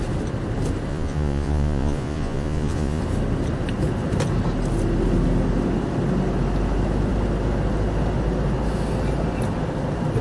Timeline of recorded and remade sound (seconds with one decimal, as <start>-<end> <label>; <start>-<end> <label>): 0.0-0.9 recorded; 0.9-3.0 remade; 3.0-10.2 recorded

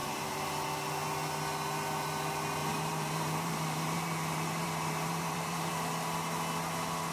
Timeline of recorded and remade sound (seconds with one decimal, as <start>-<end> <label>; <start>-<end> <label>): 0.0-0.5 remade; 0.5-2.6 recorded; 2.6-5.7 remade; 5.7-7.1 recorded